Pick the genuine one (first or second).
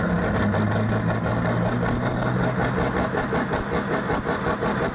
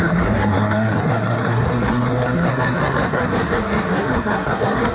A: first